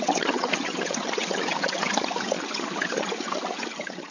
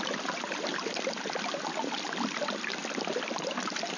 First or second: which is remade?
first